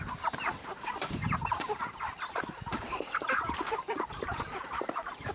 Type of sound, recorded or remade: remade